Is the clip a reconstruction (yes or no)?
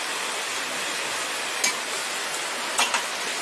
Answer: no